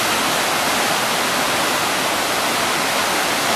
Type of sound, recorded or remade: recorded